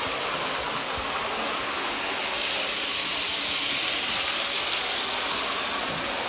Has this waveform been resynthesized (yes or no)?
no